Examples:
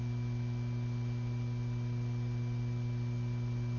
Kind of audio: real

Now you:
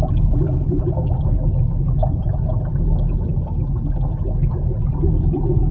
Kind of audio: real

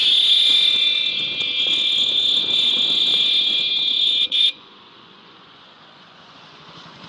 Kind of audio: fake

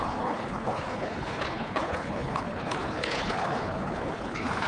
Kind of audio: fake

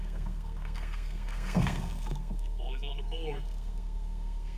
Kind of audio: fake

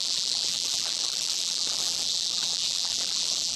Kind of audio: fake